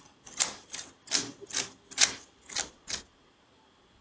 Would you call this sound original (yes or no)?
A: yes